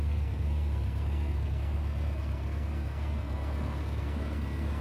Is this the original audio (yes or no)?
no